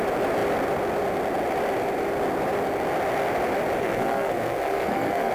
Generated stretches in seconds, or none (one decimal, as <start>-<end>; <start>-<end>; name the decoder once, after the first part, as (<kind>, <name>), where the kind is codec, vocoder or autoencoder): 3.8-5.3 (codec, SNAC)